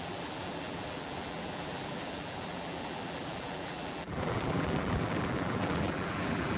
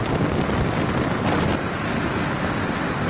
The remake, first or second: first